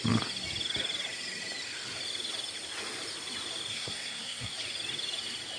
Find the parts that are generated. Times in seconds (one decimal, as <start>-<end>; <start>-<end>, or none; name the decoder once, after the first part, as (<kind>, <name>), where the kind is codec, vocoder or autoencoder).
3.7-4.5 (codec, SNAC)